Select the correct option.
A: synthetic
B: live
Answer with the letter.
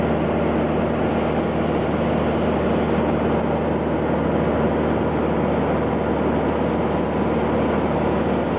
B